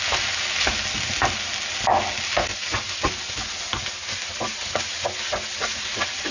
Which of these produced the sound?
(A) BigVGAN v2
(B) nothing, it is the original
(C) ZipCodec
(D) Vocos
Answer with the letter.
B